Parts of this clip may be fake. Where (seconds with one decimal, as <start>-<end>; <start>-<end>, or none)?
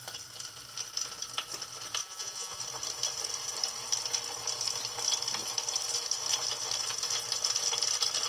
2.0-2.6